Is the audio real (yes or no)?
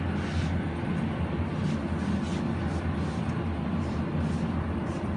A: yes